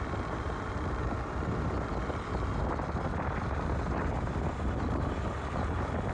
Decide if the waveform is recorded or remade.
recorded